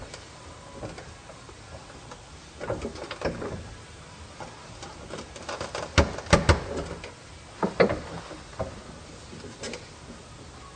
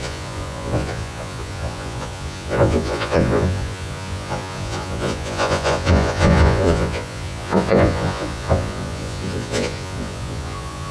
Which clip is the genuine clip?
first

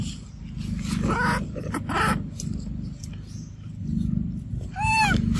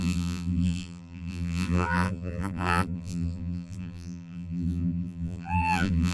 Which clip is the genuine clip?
first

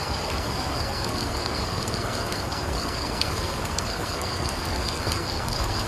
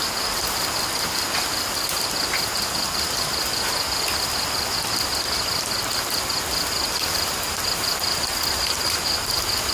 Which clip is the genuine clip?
second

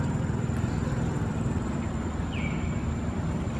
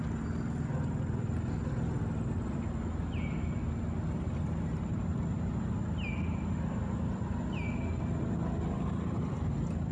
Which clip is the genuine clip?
second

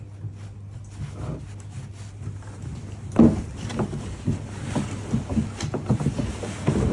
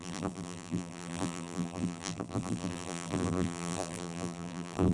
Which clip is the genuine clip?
first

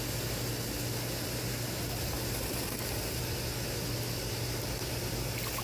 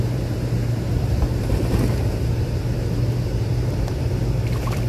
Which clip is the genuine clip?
first